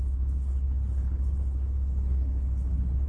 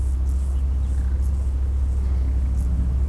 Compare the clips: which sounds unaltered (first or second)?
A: second